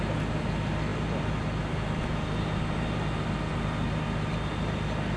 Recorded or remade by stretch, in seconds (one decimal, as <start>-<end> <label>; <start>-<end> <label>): 0.0-5.2 recorded